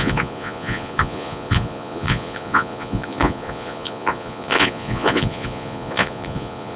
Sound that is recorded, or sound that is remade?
remade